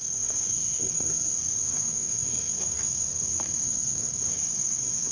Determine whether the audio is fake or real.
fake